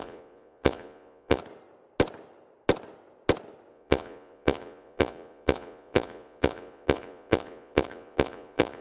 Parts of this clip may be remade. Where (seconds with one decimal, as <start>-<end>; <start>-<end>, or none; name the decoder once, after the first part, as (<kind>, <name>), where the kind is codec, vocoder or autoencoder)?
0.0-1.4 (vocoder, Vocos); 3.7-8.8